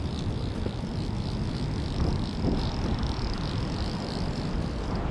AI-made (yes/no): no